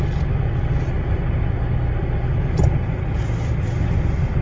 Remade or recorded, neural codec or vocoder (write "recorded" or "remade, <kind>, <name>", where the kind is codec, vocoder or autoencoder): recorded